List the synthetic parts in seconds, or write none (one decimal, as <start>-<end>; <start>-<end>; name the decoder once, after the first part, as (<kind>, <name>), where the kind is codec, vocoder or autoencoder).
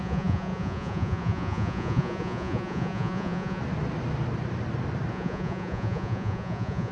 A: 0.0-3.6 (vocoder, Vocos); 5.1-6.9